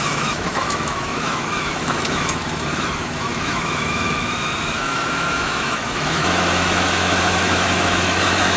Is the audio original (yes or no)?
no